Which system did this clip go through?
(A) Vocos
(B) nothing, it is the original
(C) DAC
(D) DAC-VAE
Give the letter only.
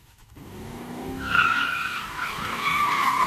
C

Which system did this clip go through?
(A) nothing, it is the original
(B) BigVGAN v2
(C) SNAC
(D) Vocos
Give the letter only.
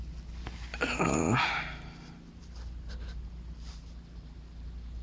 A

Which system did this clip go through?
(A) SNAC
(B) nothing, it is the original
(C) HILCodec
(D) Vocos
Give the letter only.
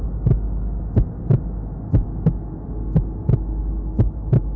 B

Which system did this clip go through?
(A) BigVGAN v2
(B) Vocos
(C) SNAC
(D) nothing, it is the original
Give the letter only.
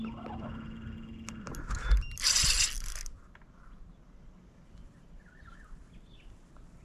D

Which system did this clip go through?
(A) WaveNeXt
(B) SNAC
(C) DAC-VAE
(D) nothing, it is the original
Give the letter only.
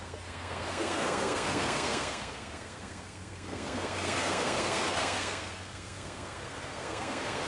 B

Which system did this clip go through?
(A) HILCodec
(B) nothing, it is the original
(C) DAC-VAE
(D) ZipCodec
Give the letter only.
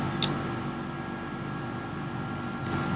B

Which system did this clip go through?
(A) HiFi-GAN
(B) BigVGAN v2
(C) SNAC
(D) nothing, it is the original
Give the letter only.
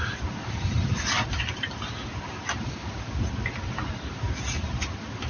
D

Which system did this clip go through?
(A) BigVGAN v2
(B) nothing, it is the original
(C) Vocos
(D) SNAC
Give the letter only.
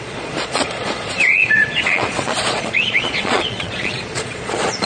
C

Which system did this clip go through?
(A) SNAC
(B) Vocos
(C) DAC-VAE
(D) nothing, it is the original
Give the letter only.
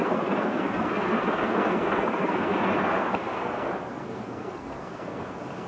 A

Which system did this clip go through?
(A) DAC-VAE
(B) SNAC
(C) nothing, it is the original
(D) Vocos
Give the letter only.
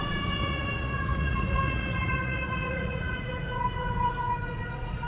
D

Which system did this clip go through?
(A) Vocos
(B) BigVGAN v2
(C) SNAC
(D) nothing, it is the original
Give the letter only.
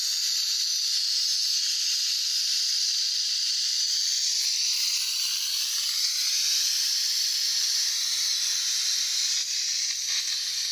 B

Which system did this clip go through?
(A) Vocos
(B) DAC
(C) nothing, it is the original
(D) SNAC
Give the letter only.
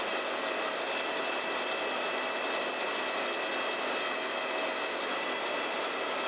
C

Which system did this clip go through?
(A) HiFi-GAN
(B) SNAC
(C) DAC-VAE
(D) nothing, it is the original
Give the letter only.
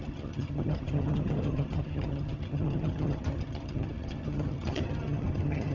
A